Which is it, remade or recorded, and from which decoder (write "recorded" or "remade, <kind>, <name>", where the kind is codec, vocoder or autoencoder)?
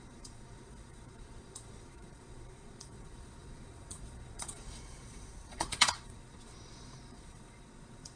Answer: remade, vocoder, Vocos